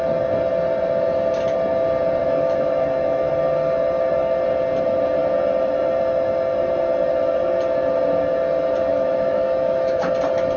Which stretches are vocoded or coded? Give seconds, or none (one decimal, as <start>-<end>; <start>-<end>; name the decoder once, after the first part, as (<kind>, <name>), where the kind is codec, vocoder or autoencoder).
2.2-3.3 (autoencoder, DAC-VAE); 8.9-10.0